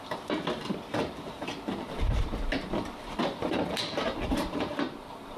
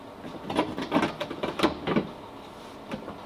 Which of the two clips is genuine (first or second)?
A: second